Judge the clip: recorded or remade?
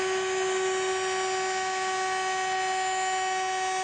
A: recorded